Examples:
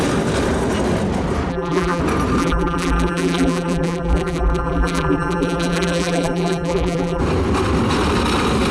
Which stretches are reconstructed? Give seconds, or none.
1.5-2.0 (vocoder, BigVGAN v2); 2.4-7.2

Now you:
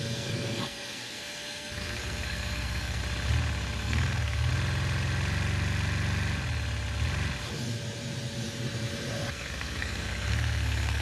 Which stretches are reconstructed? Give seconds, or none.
0.0-3.0 (codec, SNAC); 3.8-4.5; 9.3-11.0

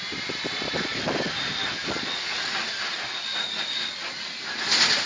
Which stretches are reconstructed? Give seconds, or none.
none

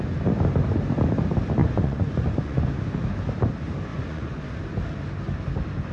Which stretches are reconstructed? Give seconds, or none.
1.6-2.8 (vocoder, Vocos); 3.9-4.4

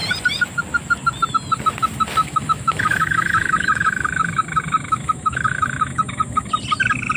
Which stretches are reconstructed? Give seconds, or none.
2.2-6.5 (autoencoder, DAC-VAE)

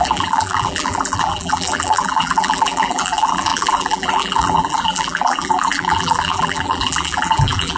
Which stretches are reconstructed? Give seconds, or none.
0.0-7.8 (vocoder, BigVGAN v2)